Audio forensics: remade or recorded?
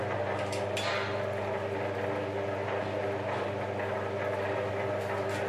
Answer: recorded